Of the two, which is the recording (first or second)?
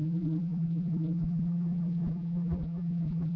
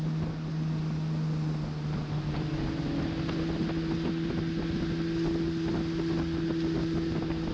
second